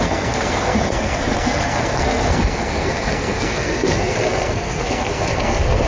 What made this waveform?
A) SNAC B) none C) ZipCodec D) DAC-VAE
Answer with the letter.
A